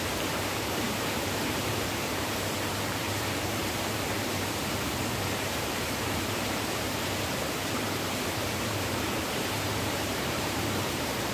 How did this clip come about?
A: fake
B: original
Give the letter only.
A